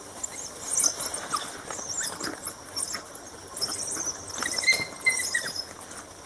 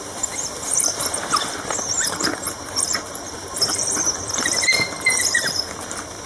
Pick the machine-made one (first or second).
second